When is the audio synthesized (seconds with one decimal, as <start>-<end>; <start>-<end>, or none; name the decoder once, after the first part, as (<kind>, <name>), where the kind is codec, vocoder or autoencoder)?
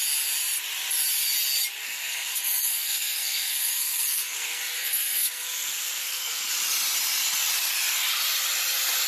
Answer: 1.8-6.5 (codec, SNAC)